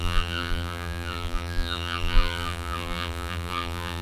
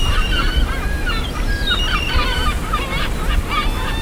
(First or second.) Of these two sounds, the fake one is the first